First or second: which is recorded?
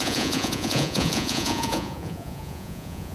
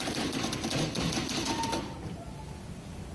second